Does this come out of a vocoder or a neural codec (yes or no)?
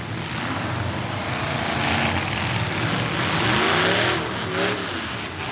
no